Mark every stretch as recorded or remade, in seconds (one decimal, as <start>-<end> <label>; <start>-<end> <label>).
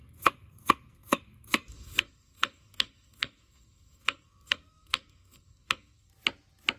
0.0-6.1 remade; 6.1-6.8 recorded